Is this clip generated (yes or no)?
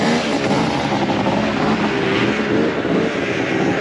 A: no